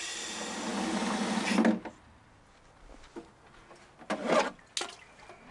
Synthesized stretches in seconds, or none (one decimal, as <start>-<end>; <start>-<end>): none